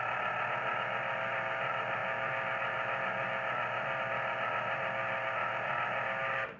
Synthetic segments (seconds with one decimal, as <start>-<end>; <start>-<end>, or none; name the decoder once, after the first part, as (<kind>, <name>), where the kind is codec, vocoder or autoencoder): none

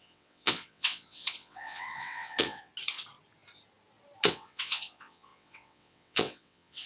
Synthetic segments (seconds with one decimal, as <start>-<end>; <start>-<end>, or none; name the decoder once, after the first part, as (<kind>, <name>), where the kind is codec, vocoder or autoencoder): 0.0-2.7 (vocoder, WaveNeXt); 4.3-6.9